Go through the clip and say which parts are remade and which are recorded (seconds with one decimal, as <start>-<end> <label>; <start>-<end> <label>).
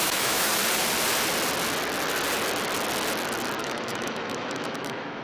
0.0-0.5 remade; 0.5-3.6 recorded; 3.6-5.2 remade